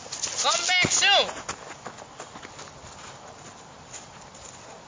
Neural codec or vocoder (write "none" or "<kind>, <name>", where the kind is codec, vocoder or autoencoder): none